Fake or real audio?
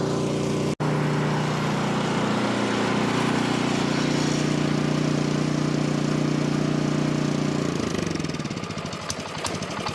real